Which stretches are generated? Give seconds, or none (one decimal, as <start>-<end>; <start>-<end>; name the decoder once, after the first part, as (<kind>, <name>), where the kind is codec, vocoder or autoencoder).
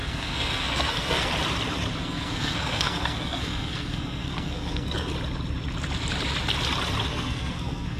0.0-1.3 (codec, SNAC); 2.0-5.1; 7.1-8.0